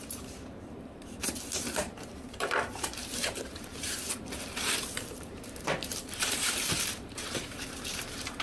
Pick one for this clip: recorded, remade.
remade